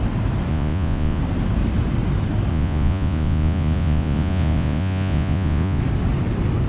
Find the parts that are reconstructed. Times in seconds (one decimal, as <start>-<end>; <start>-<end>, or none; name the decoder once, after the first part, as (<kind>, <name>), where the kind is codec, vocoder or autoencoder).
0.5-1.2 (vocoder, Vocos); 2.5-5.8